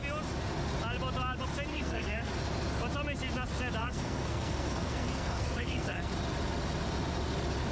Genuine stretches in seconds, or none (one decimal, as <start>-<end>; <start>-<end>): 0.0-1.7; 2.3-3.8; 6.1-7.7